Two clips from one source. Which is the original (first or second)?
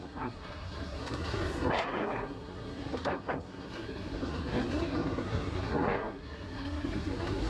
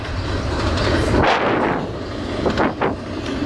second